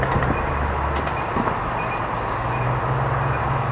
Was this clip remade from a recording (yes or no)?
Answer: no